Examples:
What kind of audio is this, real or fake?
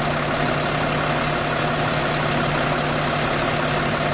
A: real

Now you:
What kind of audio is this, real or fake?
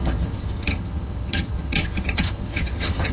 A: fake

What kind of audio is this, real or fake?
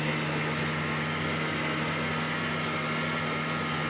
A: real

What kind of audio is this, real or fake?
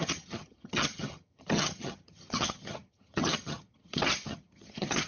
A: fake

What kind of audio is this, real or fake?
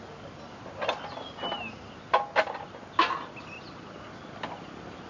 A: real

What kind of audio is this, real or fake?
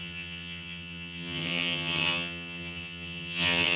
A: fake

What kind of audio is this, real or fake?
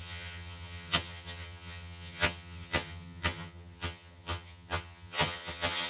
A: fake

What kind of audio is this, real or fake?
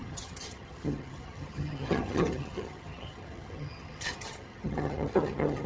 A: fake